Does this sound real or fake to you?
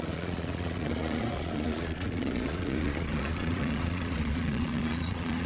fake